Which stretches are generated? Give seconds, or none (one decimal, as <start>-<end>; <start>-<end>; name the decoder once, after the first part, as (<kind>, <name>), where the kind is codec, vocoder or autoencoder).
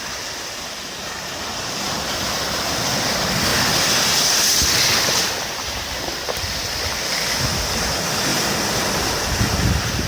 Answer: none